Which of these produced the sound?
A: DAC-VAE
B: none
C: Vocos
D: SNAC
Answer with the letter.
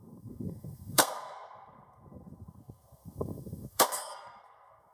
D